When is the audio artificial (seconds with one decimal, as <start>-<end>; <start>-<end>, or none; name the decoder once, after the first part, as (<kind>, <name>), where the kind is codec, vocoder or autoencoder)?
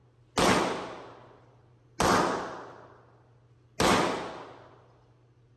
none